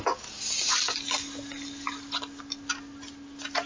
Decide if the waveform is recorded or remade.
recorded